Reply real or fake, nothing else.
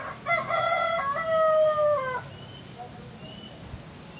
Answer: real